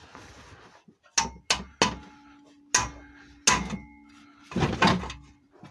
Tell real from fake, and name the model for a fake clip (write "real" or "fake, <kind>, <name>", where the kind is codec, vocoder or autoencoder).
real